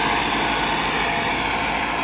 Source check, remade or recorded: recorded